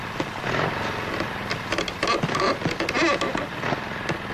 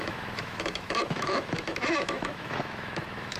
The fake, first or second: second